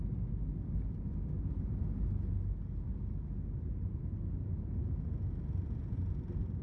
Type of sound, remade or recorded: recorded